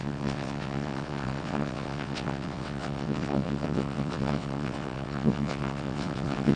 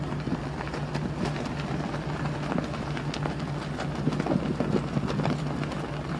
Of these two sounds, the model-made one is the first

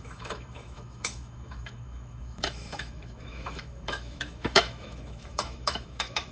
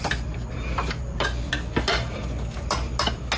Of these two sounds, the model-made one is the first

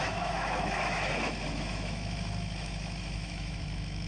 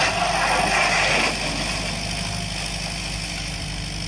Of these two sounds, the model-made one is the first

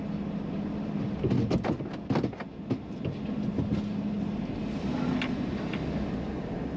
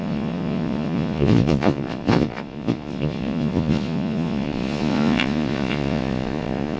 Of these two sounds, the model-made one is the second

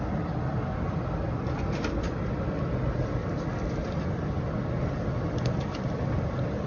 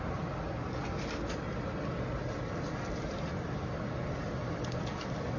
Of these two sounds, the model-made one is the first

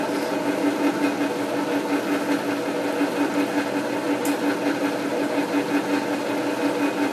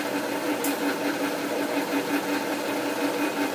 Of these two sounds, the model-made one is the second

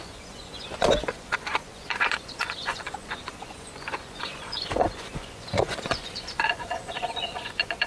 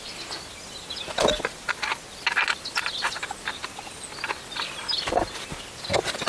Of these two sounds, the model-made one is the first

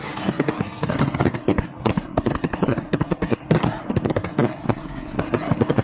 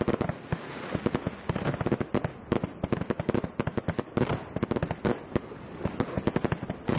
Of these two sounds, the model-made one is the first